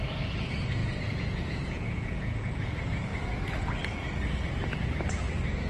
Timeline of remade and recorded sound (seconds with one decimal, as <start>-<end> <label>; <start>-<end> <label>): 0.0-0.8 recorded; 0.8-2.7 remade; 2.7-5.7 recorded